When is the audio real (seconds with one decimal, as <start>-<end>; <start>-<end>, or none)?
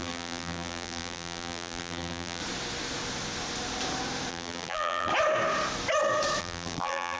2.4-4.3; 5.1-6.4